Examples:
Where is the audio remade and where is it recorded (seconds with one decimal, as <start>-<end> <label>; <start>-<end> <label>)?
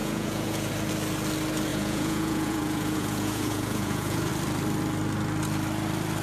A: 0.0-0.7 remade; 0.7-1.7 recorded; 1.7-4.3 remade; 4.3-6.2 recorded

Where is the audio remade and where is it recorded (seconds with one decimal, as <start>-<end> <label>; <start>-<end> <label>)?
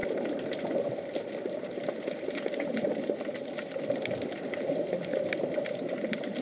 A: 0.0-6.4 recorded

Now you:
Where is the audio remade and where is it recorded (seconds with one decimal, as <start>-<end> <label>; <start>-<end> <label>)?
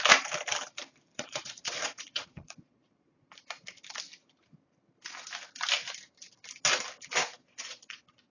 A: 0.0-1.1 recorded; 1.1-3.3 remade; 3.3-7.3 recorded; 7.3-8.3 remade